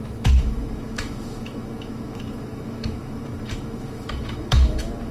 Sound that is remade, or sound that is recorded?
remade